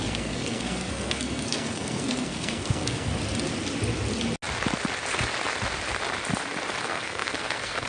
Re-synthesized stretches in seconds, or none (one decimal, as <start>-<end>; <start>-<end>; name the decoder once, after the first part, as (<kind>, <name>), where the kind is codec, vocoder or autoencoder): 0.0-3.1 (codec, SNAC); 6.8-7.9